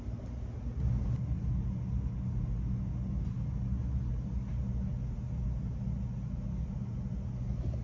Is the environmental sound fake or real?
real